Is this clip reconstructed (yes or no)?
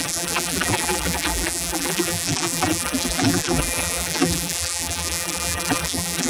yes